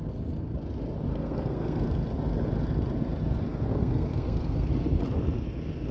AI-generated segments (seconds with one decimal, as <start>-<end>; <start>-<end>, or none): 1.1-1.8; 3.7-4.7